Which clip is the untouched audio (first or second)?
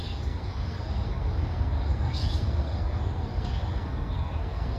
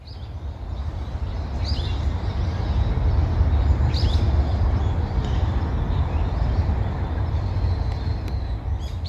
second